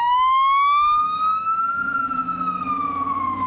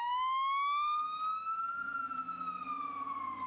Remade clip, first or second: first